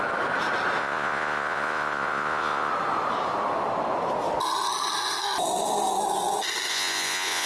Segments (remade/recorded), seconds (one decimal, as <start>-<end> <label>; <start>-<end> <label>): 0.0-0.8 recorded; 0.8-2.7 remade; 2.7-6.7 recorded; 6.7-7.5 remade